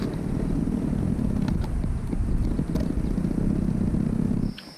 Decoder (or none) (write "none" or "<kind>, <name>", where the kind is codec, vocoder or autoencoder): none